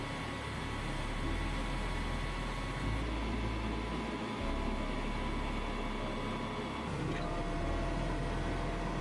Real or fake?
real